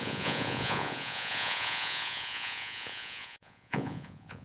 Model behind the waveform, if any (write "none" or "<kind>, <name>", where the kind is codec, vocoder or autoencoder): vocoder, Vocos